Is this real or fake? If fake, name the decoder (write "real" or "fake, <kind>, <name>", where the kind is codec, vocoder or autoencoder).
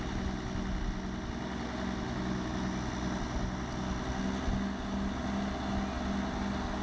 real